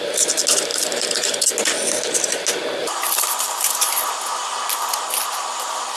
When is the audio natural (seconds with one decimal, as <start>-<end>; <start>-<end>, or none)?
0.0-0.7; 1.5-2.8; 4.6-6.0